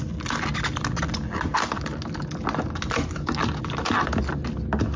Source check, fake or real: real